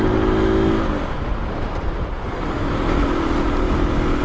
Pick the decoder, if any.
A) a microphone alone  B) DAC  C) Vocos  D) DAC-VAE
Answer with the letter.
A